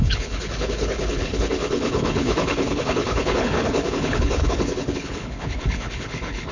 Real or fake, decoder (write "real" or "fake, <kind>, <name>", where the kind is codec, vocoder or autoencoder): fake, codec, HILCodec